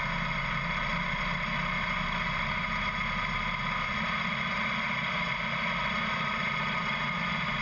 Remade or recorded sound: recorded